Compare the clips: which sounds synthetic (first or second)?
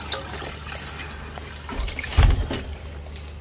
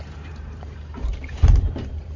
second